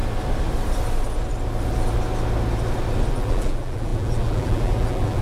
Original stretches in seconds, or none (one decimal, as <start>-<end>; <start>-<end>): 0.0-3.1